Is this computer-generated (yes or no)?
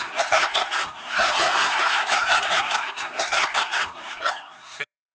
yes